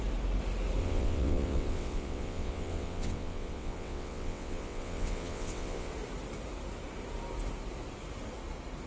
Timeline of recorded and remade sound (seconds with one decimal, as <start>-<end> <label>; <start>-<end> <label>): 0.0-0.8 recorded; 0.8-5.9 remade; 5.9-8.9 recorded